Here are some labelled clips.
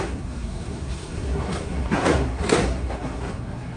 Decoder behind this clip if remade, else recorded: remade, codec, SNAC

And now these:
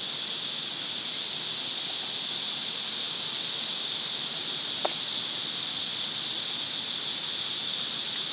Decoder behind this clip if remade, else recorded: recorded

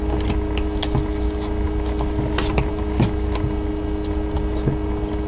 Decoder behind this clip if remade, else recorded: recorded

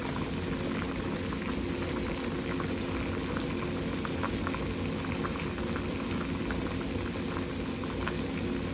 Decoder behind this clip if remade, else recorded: recorded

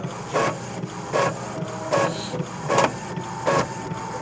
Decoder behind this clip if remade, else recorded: recorded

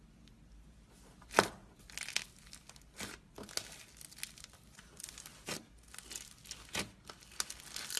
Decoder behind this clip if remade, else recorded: recorded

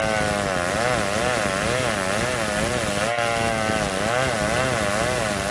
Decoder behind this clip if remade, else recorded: recorded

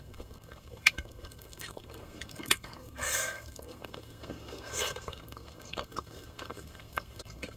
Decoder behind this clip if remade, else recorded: remade, codec, SNAC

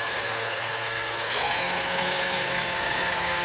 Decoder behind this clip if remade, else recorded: remade, codec, SNAC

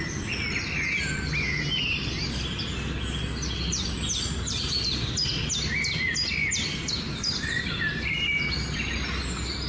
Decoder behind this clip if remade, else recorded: recorded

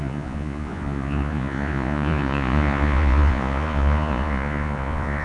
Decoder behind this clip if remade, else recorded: remade, vocoder, Vocos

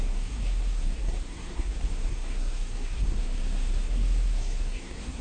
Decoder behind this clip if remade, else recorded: remade, codec, SNAC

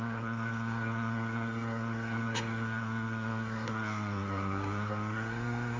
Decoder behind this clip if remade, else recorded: remade, codec, SNAC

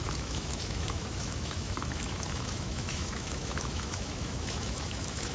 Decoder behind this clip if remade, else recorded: remade, autoencoder, DAC-VAE